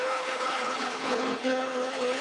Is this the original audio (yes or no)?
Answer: no